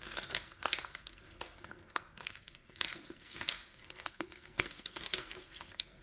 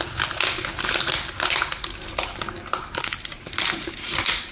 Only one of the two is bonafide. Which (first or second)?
second